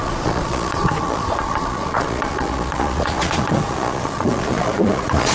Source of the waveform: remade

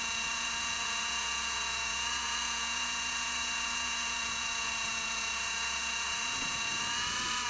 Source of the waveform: remade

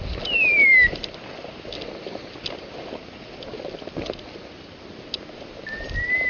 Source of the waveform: recorded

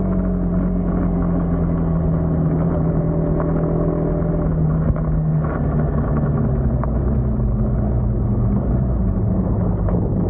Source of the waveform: recorded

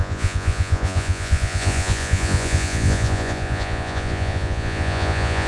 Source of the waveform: remade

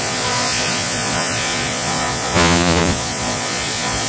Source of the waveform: remade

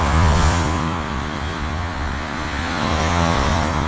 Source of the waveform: remade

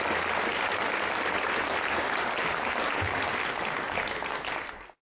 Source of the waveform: recorded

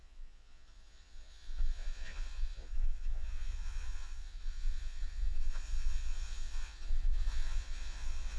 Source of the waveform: remade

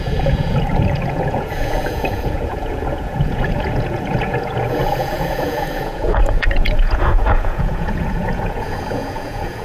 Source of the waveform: remade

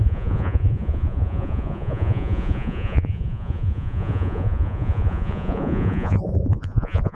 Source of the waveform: remade